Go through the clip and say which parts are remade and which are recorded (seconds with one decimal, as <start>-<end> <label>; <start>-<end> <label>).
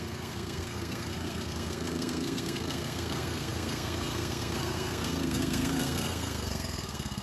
0.0-7.2 remade